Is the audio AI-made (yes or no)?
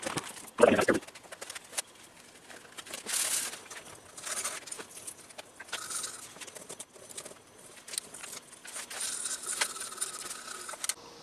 no